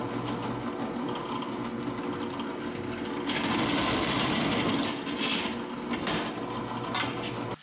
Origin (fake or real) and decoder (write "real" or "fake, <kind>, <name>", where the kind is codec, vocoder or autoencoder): real